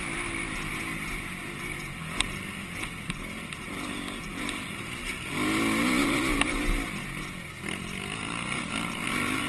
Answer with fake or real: real